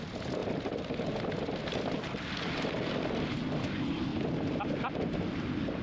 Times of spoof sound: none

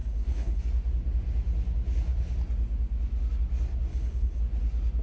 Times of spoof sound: 0.0-0.6 (codec, HILCodec); 3.9-4.4